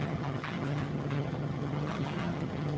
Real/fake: fake